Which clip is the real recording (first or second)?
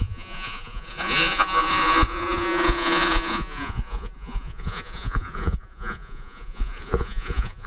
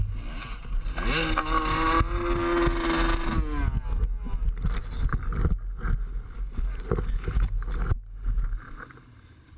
second